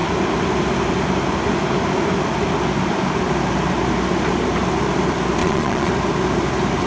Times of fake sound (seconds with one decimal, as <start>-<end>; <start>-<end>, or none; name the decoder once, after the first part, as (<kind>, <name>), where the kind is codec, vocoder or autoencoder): 5.4-5.9 (vocoder, Vocos)

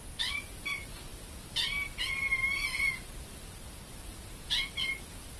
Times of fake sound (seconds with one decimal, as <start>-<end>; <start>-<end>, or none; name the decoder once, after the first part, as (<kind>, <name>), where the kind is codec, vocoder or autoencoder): 4.1-4.7 (vocoder, Vocos)

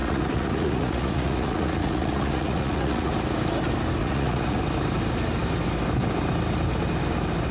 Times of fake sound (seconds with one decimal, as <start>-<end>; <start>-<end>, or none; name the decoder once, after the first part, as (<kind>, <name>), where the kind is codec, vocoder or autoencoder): 0.0-3.1 (vocoder, Vocos); 4.0-4.6

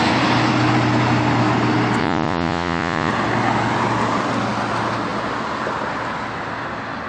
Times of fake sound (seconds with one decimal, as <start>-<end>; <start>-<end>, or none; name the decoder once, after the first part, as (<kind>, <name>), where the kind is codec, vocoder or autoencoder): 2.0-3.1 (vocoder, Vocos)

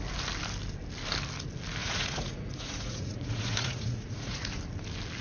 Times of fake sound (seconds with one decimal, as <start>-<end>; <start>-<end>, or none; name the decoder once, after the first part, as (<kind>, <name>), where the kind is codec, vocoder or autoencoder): 1.8-4.6 (vocoder, Vocos)